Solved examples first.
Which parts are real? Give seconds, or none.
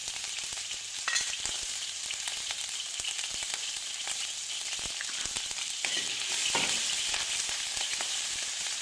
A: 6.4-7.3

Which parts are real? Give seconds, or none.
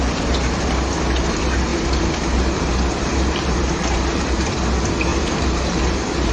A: 0.0-1.7; 4.5-5.1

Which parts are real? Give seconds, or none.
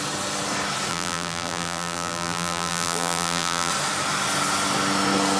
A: 0.0-0.9; 3.7-5.4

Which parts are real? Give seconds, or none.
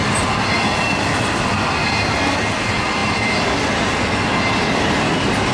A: 0.0-5.5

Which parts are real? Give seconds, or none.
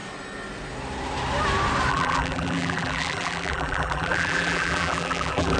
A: 0.0-1.9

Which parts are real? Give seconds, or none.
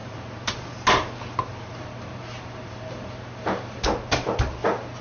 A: 0.5-1.5; 3.9-5.0